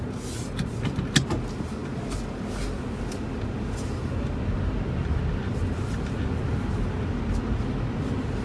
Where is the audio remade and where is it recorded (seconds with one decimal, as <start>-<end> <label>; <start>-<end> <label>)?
0.0-8.4 recorded